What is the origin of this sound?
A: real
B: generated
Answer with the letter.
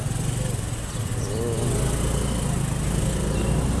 A